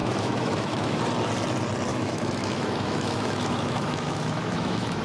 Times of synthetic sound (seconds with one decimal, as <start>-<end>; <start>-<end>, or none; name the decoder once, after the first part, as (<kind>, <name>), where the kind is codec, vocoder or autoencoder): 0.0-1.0 (autoencoder, DAC-VAE); 1.9-5.0